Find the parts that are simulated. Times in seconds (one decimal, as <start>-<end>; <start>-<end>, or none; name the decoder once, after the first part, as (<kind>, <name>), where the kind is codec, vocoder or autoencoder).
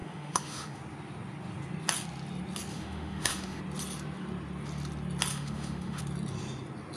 0.0-0.8 (autoencoder, DAC-VAE); 2.7-3.6; 5.3-6.0